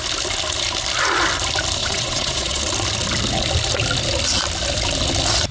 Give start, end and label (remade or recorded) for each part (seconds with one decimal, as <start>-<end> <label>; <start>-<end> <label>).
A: 0.0-1.8 recorded; 1.8-2.6 remade; 2.6-5.5 recorded